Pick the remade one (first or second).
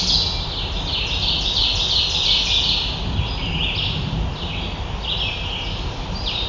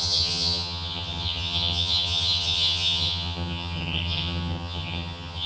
second